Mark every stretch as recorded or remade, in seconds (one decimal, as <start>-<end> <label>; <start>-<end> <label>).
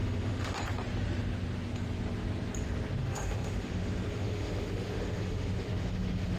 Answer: 0.0-0.6 remade; 0.6-3.0 recorded; 3.0-6.4 remade